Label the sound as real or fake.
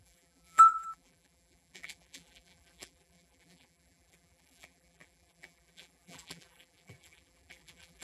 fake